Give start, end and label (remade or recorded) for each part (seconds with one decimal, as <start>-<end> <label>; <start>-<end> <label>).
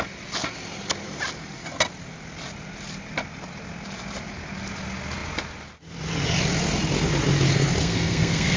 0.0-7.8 recorded; 7.8-8.6 remade